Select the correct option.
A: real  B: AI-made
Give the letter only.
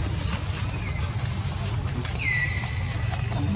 A